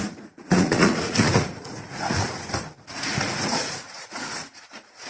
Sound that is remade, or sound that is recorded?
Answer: remade